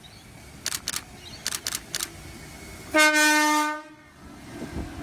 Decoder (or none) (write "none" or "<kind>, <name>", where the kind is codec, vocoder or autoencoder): none